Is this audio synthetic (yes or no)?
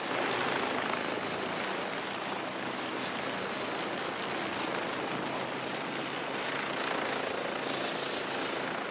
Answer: no